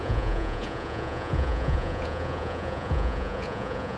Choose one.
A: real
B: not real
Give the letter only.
B